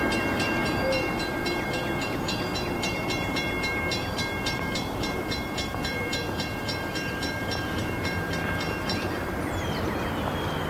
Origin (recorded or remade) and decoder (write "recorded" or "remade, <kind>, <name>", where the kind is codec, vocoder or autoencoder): remade, vocoder, BigVGAN v2